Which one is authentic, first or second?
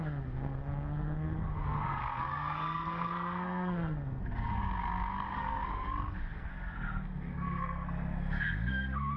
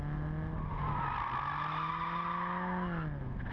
second